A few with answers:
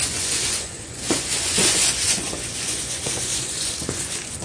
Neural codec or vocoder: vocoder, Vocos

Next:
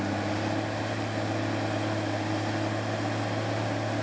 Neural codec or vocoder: none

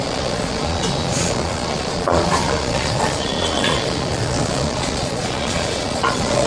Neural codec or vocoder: vocoder, Vocos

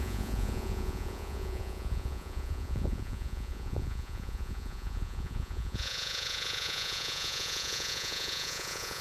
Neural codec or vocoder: vocoder, Vocos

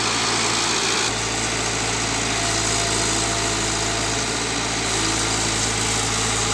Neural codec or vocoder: none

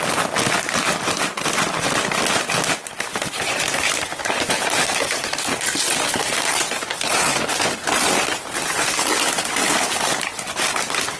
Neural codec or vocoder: none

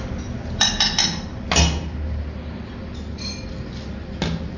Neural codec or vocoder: none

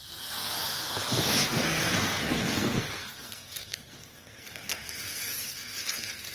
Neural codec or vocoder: codec, SNAC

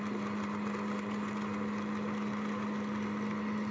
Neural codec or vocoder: none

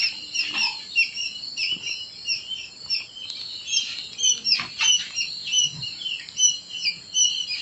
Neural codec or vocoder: none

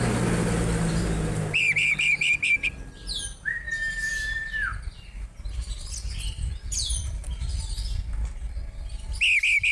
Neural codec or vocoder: none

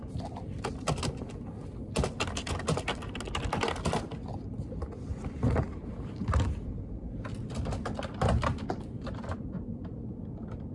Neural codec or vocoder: none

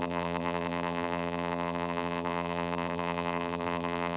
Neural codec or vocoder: vocoder, BigVGAN v2